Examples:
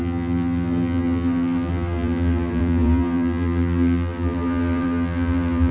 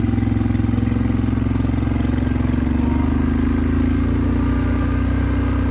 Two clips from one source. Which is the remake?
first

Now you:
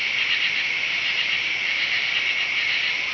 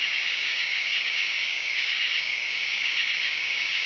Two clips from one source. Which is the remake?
second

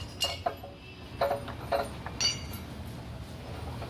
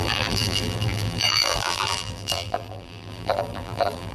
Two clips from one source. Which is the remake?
second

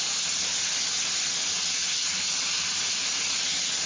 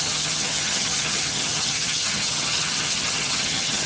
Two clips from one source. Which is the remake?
second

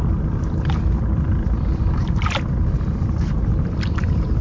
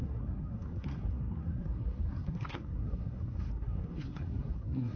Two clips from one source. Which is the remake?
second